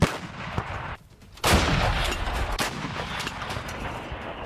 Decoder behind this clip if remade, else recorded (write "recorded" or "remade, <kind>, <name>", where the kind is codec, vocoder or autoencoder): recorded